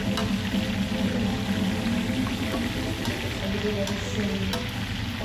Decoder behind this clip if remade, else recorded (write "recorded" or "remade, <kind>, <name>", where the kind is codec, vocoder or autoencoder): recorded